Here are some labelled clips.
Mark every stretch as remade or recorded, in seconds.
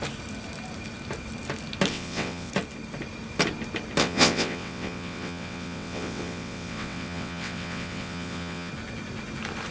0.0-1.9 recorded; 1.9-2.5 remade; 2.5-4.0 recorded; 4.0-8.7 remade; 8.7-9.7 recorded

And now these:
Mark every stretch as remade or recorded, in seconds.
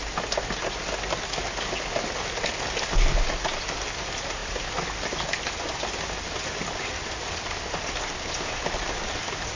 0.0-9.6 recorded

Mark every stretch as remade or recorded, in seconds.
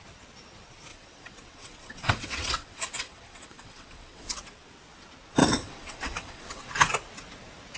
0.0-0.9 recorded; 0.9-4.4 remade; 4.4-5.4 recorded; 5.4-6.7 remade; 6.7-7.8 recorded